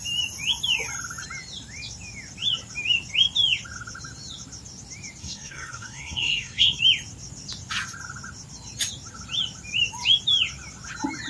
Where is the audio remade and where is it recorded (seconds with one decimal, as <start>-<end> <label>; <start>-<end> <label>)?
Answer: 0.0-5.2 recorded; 5.2-6.8 remade; 6.8-11.3 recorded